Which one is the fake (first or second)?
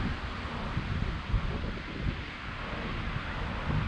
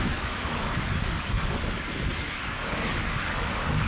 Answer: second